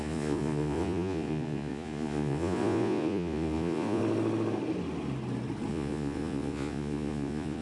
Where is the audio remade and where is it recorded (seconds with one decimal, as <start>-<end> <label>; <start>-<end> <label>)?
0.0-4.0 remade; 4.0-5.7 recorded; 5.7-7.6 remade

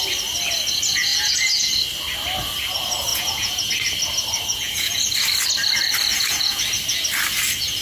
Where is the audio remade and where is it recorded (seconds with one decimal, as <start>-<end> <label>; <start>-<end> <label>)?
0.0-1.1 recorded; 1.1-1.7 remade; 1.7-3.1 recorded; 3.1-3.7 remade; 3.7-4.5 recorded; 4.5-5.1 remade; 5.1-6.1 recorded; 6.1-6.6 remade; 6.6-7.8 recorded